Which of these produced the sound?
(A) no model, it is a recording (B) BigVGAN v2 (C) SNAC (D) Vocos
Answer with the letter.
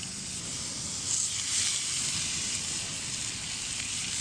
A